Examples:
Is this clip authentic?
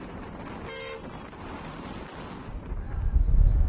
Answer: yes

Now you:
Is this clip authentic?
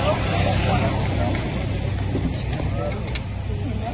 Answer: yes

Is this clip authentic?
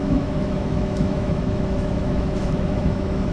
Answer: no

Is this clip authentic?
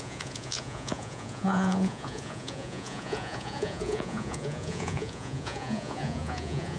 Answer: no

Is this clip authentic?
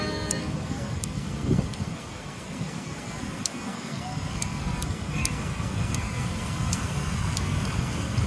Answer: no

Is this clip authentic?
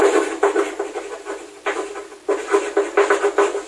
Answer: yes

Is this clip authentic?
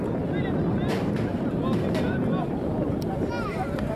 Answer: yes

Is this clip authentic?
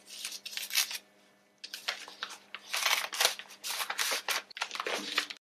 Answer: yes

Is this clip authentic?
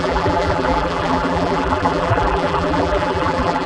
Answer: no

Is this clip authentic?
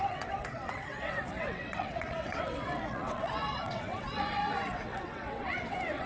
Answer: no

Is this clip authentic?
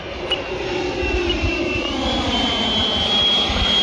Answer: yes